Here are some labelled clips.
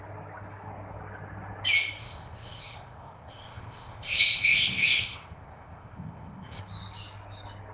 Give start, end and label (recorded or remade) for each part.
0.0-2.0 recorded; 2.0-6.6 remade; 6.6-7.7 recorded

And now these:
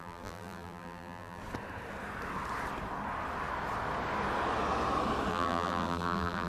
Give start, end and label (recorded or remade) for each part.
0.0-1.4 remade; 1.4-5.3 recorded; 5.3-6.5 remade

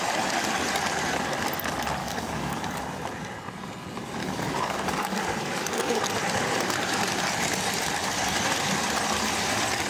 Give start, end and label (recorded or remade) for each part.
0.0-2.0 recorded; 2.0-2.8 remade; 2.8-4.2 recorded; 4.2-6.0 remade; 6.0-9.9 recorded

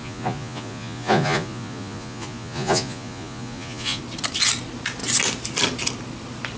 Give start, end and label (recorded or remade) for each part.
0.0-4.0 remade; 4.0-6.6 recorded

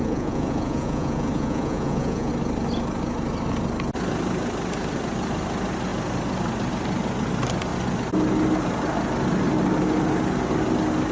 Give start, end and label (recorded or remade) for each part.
0.0-2.3 remade; 2.3-11.1 recorded